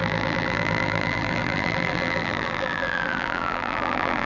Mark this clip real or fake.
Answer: fake